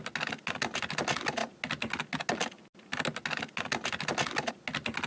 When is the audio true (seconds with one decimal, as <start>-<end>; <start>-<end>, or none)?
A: 0.0-5.1

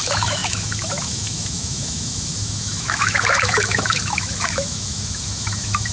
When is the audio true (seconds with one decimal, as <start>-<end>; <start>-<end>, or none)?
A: none

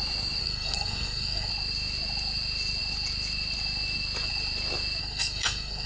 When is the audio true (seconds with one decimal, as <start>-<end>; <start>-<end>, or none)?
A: 0.0-0.4; 1.5-5.0

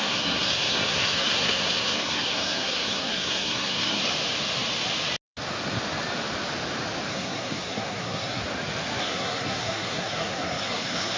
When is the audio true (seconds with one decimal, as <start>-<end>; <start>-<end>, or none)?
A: 4.0-7.1; 8.4-9.0

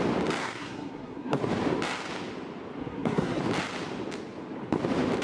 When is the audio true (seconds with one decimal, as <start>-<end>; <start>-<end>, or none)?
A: 0.0-0.4; 1.4-2.8; 3.4-5.2

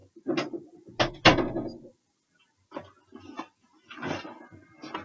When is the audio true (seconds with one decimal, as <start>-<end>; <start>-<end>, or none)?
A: 0.0-5.0

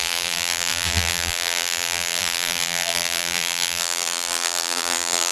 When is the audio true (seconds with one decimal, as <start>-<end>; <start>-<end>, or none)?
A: none